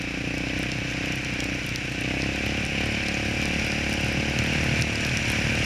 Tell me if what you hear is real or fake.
real